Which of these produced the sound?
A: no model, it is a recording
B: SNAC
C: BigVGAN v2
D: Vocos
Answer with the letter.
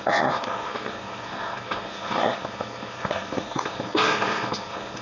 B